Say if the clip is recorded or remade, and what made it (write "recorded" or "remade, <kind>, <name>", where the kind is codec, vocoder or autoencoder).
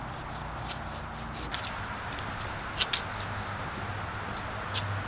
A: recorded